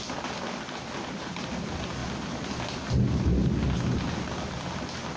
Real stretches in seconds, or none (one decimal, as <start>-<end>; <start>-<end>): 0.0-5.2